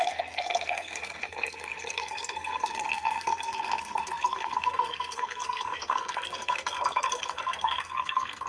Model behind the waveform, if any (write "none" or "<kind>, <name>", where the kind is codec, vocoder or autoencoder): codec, SNAC